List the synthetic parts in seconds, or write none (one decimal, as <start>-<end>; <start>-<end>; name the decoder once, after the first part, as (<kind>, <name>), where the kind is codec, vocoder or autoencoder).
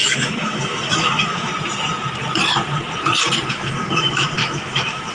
0.0-1.5 (autoencoder, DAC-VAE); 3.5-5.1